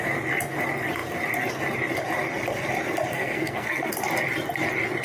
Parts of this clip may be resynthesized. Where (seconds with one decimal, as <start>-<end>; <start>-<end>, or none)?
3.1-3.9